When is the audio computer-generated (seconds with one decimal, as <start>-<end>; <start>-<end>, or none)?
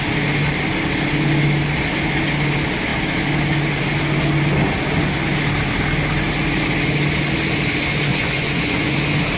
8.1-9.0